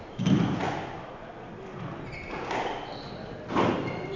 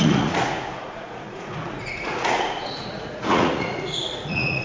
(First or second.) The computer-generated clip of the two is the second